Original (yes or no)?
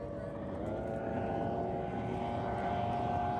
yes